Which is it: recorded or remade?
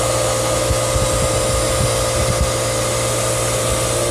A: recorded